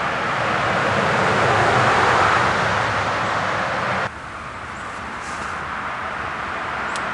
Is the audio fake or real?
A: real